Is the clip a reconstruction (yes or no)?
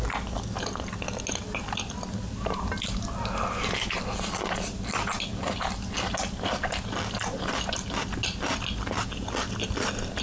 no